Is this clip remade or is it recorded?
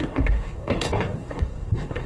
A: remade